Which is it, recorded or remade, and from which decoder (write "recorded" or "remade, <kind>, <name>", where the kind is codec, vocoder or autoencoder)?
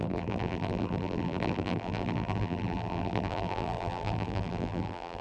remade, vocoder, BigVGAN v2